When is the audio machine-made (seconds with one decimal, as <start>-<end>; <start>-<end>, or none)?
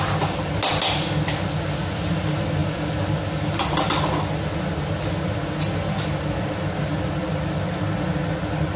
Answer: none